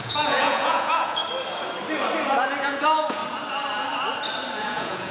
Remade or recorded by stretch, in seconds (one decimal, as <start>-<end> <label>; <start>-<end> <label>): 0.0-1.2 remade; 1.2-2.6 recorded; 2.6-3.2 remade; 3.2-4.6 recorded; 4.6-5.1 remade

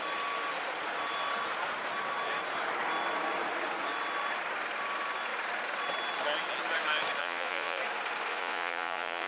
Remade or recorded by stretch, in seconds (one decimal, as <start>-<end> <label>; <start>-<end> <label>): 0.0-7.2 recorded; 7.2-7.8 remade; 7.8-8.3 recorded; 8.3-9.3 remade